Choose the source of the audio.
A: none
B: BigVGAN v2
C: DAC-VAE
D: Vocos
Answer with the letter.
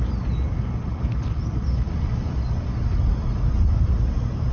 A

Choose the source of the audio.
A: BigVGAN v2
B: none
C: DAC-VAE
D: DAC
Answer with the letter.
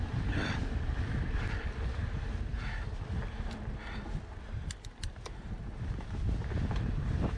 A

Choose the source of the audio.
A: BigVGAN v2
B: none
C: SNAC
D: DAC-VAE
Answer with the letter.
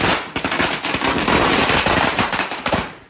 A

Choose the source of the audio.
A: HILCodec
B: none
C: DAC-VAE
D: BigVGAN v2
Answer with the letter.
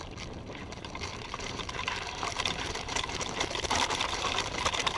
D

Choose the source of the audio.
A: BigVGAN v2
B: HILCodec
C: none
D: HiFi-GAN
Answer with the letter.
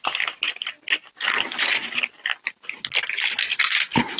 C